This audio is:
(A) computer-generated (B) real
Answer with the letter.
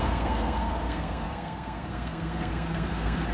A